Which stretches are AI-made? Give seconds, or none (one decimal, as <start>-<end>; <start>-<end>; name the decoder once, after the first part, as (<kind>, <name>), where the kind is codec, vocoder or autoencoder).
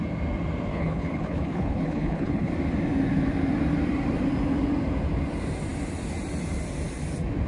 0.7-2.5 (codec, HILCodec)